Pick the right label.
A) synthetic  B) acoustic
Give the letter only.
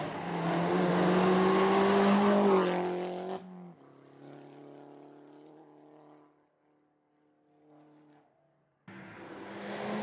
B